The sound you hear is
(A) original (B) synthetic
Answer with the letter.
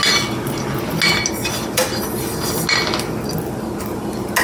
A